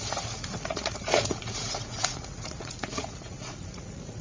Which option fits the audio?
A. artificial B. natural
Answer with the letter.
A